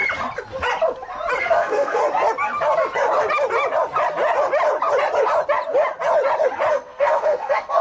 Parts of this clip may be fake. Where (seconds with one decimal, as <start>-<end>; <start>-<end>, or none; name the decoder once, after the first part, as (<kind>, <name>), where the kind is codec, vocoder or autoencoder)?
1.4-2.0 (codec, SNAC); 6.7-7.8